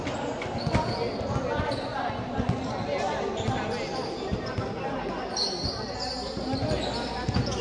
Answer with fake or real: real